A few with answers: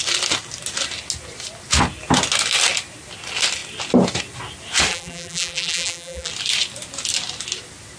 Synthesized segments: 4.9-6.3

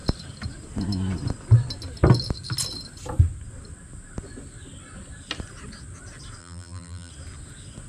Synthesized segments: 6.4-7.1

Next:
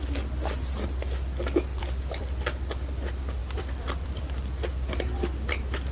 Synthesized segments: 1.7-2.2; 3.4-4.2

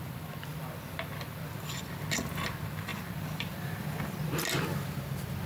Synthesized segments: 0.5-1.5; 2.9-4.5